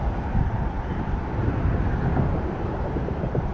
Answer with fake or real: real